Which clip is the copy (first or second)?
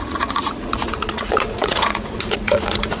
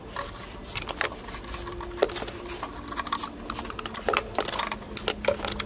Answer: first